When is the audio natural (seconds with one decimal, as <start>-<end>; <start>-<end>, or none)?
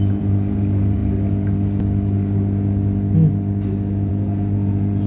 1.0-4.1